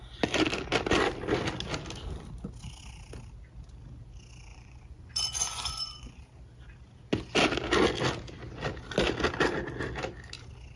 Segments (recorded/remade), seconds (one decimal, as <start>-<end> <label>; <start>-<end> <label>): 0.0-4.5 recorded; 4.5-6.2 remade; 6.2-10.8 recorded